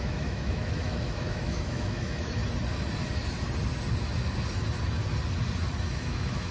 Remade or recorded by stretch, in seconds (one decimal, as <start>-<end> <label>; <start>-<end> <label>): 0.0-2.4 remade; 2.4-5.9 recorded; 5.9-6.5 remade